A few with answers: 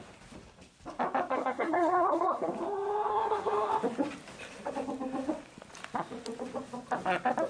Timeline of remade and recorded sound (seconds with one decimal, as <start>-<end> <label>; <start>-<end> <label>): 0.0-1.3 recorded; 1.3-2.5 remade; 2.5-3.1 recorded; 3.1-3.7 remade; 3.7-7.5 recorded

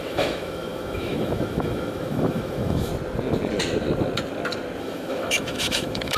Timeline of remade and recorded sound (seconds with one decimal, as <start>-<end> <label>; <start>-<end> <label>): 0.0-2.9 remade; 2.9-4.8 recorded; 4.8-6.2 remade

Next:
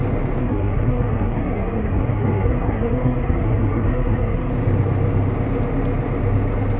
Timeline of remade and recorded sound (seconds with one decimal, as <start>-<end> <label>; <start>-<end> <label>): 0.0-0.4 recorded; 0.4-4.5 remade; 4.5-6.8 recorded

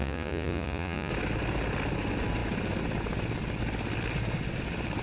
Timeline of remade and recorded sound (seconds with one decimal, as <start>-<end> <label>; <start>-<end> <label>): 0.0-1.1 remade; 1.1-5.0 recorded

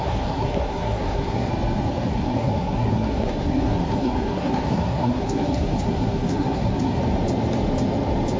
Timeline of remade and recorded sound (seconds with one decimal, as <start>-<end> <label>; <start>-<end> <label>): 0.0-1.5 remade; 1.5-2.1 recorded; 2.1-7.0 remade; 7.0-8.4 recorded